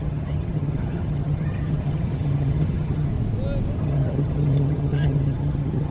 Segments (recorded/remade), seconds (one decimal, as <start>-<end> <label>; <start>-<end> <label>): 0.0-3.1 remade; 3.1-3.8 recorded; 3.8-5.9 remade